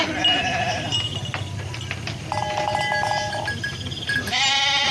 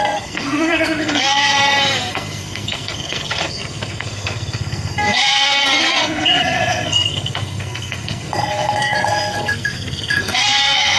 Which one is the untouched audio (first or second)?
first